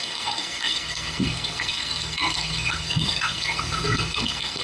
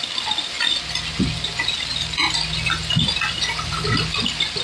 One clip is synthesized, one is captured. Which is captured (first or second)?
second